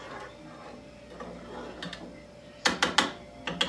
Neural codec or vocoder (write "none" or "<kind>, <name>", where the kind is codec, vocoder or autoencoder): none